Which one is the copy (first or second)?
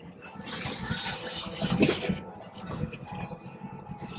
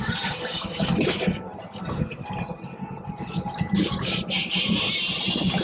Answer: second